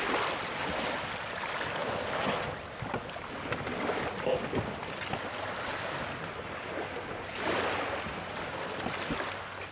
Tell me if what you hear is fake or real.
real